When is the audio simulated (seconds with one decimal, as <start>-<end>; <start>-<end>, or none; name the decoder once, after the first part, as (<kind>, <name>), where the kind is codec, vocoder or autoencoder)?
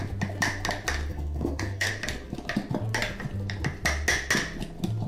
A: 1.1-1.9 (codec, SNAC)